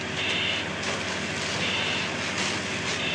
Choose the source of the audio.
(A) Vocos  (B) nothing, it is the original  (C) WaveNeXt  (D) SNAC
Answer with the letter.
B